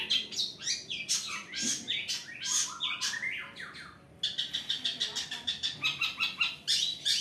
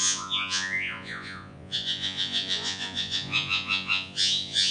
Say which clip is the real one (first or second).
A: first